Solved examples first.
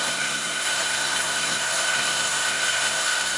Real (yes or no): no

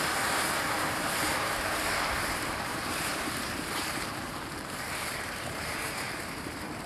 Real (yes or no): no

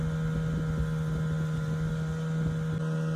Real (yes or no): yes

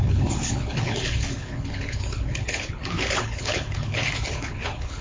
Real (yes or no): no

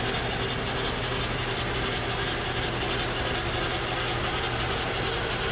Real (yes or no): yes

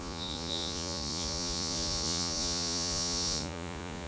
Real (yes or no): no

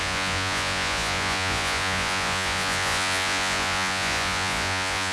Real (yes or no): no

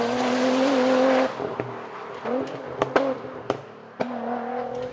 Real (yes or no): yes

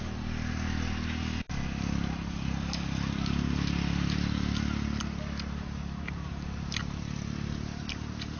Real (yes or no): yes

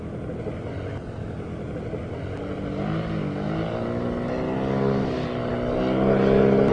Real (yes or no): yes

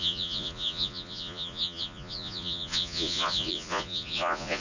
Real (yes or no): no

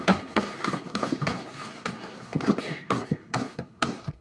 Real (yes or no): no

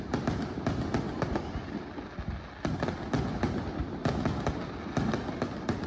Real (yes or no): yes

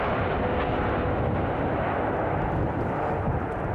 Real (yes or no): yes